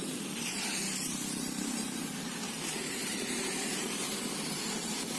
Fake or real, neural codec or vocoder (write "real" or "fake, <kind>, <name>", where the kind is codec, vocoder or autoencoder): fake, vocoder, BigVGAN v2